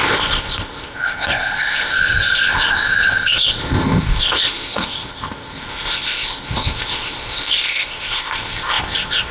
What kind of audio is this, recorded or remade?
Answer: remade